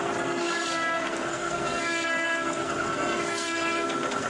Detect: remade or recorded remade